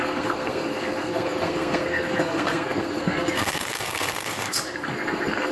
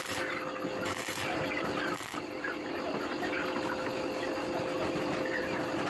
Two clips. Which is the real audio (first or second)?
second